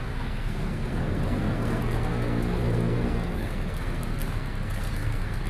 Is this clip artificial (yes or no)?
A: yes